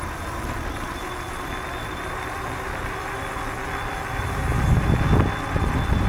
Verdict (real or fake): real